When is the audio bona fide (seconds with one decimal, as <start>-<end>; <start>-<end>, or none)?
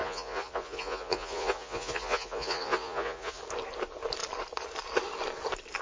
3.4-5.8